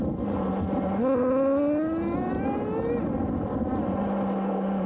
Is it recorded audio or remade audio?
recorded